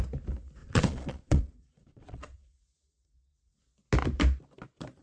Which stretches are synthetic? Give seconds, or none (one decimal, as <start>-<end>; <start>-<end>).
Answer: 0.6-3.6